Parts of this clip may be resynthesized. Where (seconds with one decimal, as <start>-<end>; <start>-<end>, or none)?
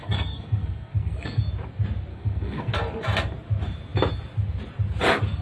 0.0-1.4; 2.1-2.7